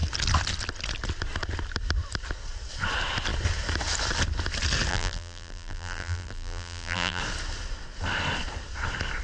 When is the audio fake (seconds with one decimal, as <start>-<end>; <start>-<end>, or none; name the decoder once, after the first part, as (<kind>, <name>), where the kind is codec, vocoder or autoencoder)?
4.9-7.2 (vocoder, BigVGAN v2)